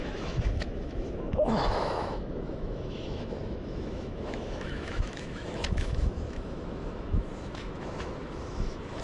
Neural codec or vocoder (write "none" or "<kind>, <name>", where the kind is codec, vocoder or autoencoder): autoencoder, DAC-VAE